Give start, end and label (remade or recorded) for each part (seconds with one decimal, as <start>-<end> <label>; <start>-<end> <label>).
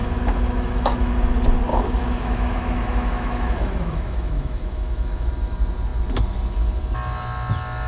0.0-1.1 remade; 1.1-1.7 recorded; 1.7-5.3 remade; 5.3-7.9 recorded